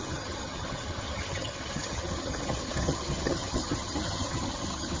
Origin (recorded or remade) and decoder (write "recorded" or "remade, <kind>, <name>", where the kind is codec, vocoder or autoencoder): remade, vocoder, HiFi-GAN